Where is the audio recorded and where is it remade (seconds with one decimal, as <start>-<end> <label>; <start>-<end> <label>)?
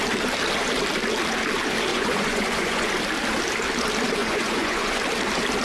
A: 0.0-1.9 recorded; 1.9-2.9 remade; 2.9-4.2 recorded; 4.2-5.0 remade; 5.0-5.6 recorded